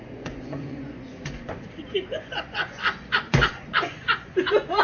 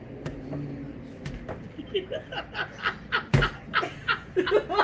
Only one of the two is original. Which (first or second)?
second